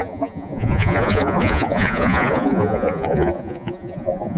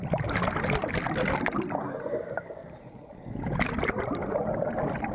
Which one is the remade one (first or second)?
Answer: first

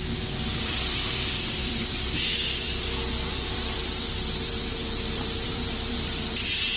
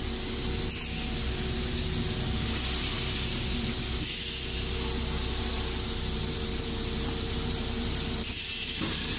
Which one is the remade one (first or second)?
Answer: first